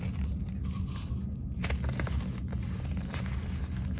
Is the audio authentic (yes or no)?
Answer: yes